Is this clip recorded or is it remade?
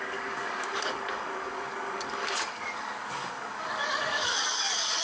remade